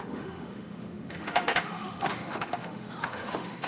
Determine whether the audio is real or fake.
fake